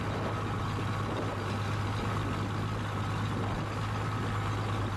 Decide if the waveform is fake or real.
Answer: real